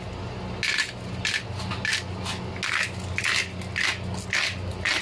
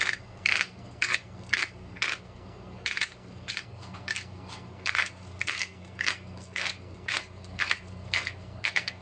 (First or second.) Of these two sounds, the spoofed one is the second